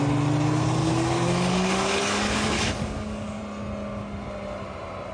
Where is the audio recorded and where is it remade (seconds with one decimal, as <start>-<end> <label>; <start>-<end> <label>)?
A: 0.0-0.8 recorded; 0.8-3.4 remade; 3.4-5.1 recorded